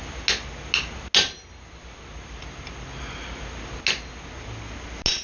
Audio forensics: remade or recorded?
recorded